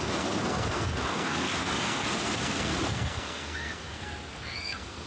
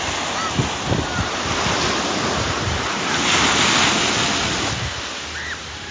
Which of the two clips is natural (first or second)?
second